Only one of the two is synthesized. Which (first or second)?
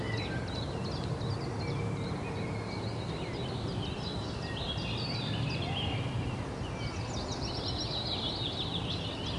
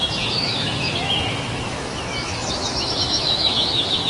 second